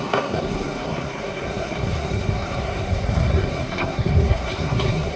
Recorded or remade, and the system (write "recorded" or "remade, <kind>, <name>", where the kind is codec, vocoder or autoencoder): remade, codec, SNAC